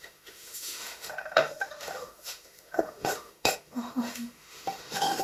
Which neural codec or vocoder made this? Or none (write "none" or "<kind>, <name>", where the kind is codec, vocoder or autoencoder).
autoencoder, DAC-VAE